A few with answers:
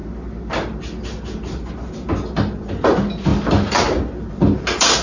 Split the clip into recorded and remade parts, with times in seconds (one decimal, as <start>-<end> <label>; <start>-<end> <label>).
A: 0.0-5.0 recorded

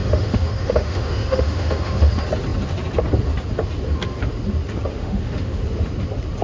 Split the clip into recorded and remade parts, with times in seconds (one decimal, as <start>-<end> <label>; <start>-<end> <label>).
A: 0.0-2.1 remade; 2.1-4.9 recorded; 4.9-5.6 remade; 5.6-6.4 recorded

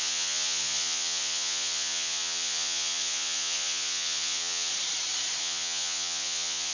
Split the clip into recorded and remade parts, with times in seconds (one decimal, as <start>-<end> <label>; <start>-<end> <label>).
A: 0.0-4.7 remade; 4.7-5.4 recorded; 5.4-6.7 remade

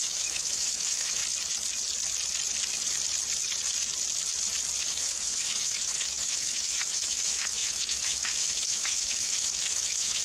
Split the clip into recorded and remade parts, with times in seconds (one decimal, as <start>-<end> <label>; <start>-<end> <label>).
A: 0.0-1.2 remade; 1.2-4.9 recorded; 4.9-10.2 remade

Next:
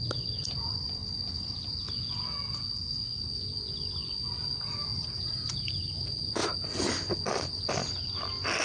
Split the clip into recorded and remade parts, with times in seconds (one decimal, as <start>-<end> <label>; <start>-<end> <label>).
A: 0.0-1.0 recorded; 1.0-1.7 remade; 1.7-8.6 recorded

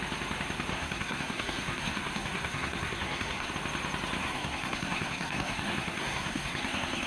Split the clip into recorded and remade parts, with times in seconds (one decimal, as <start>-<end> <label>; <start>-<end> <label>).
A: 0.0-0.7 recorded; 0.7-3.5 remade; 3.5-4.2 recorded; 4.2-7.1 remade

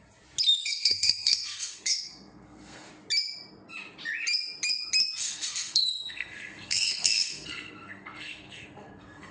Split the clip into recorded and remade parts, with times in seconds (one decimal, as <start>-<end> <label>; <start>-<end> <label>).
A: 0.0-0.6 recorded; 0.6-2.9 remade; 2.9-5.2 recorded; 5.2-9.3 remade